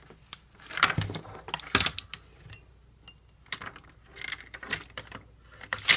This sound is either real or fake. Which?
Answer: real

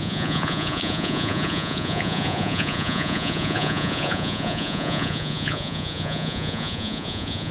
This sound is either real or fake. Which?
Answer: fake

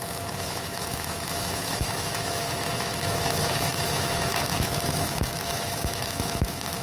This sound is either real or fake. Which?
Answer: fake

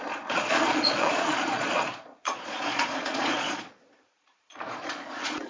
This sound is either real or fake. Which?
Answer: fake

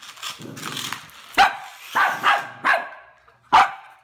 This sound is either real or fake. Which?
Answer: real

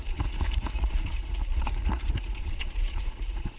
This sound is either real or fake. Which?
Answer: fake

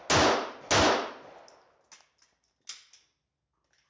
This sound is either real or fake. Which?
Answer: real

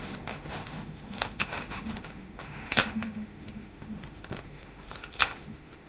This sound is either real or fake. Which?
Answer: fake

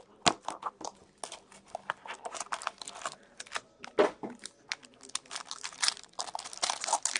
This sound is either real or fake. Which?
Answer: real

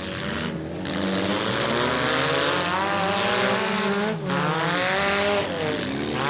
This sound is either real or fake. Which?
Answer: real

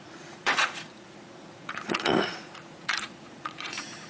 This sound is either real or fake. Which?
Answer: fake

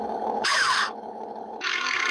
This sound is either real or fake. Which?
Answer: fake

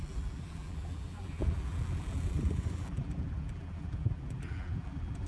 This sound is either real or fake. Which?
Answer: fake